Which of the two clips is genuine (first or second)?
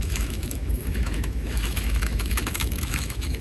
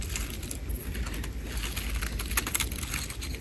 second